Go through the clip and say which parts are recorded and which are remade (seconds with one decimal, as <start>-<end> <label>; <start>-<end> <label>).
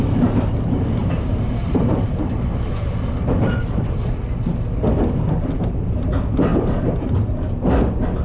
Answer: 0.0-1.0 recorded; 1.0-1.8 remade; 1.8-6.5 recorded; 6.5-7.1 remade; 7.1-8.2 recorded